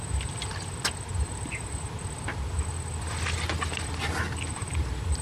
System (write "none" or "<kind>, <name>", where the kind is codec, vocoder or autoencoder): none